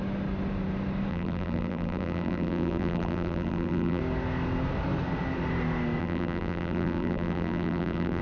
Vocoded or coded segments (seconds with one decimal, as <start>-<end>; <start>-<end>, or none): 1.1-4.0; 6.0-8.2